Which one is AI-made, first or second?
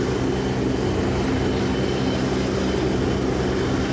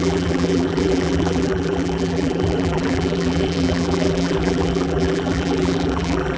second